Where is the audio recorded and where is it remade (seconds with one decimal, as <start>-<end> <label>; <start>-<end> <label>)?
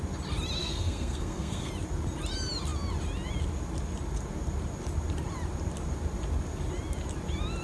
0.0-0.6 recorded; 0.6-1.7 remade; 1.7-7.6 recorded